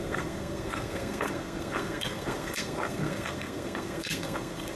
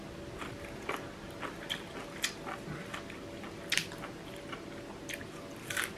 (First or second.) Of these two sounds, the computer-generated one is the first